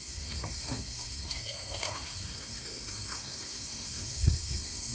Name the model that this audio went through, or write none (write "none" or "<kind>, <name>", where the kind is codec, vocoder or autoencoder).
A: codec, SNAC